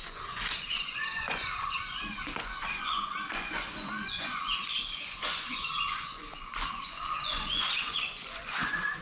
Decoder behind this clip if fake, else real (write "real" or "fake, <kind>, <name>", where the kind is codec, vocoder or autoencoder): fake, vocoder, Vocos